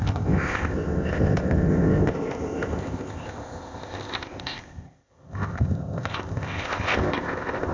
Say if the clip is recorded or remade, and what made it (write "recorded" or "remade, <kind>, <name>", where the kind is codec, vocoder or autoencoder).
remade, codec, ZipCodec